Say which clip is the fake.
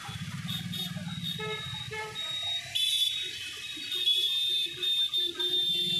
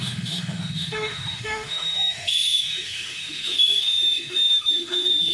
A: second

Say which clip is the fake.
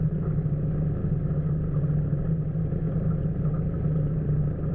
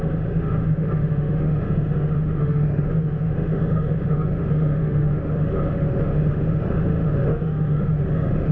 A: second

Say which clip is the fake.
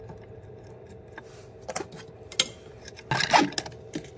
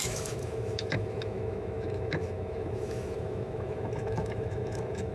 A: second